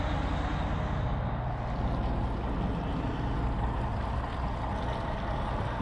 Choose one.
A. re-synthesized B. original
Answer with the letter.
B